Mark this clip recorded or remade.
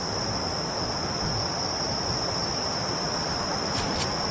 remade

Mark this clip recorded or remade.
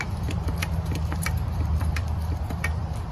remade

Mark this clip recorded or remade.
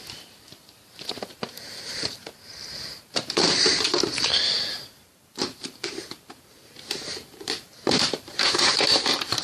remade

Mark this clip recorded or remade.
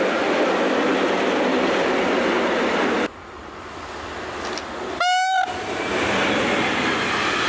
recorded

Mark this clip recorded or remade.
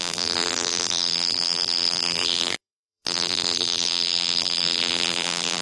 remade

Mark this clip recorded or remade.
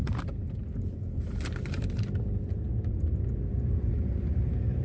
remade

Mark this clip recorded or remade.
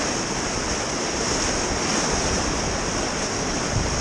recorded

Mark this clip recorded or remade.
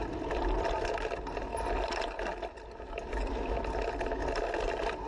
recorded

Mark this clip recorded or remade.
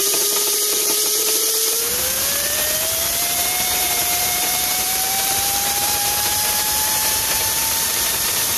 remade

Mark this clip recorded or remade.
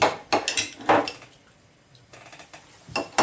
recorded